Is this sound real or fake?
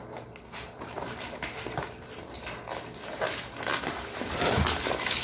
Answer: real